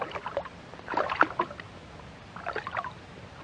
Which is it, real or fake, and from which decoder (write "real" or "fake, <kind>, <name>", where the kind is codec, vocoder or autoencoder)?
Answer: fake, vocoder, BigVGAN v2